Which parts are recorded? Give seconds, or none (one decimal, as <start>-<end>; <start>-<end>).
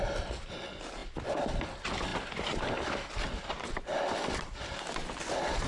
0.0-5.7